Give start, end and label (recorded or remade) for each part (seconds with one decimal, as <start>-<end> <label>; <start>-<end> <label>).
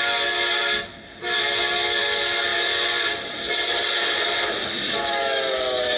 0.0-6.0 recorded